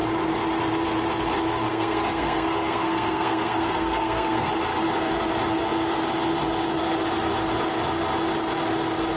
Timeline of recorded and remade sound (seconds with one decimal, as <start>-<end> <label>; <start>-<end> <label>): 0.0-1.7 recorded; 1.7-4.5 remade; 4.5-9.2 recorded